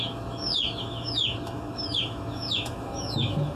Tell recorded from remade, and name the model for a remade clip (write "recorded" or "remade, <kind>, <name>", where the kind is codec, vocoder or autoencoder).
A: remade, autoencoder, DAC-VAE